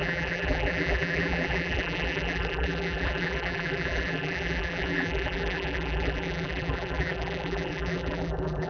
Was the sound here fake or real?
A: fake